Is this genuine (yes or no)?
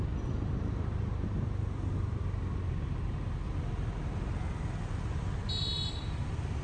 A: yes